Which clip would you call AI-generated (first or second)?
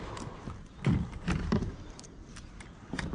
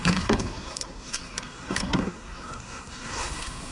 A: second